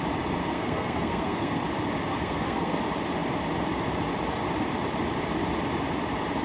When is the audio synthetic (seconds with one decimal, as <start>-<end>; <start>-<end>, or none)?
0.4-1.6; 2.1-2.8